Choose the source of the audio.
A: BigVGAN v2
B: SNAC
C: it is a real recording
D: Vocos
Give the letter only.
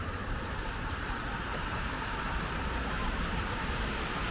A